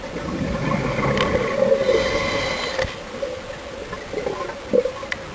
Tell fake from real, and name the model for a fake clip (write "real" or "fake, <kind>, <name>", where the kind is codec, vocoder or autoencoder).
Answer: real